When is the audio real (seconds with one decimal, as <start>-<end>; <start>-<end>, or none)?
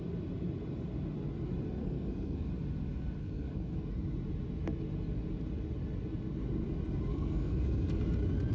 0.0-1.8; 2.5-3.2; 3.9-7.1; 8.0-8.5